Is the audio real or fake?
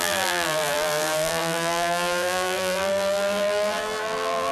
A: fake